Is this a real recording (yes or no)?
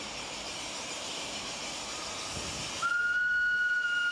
yes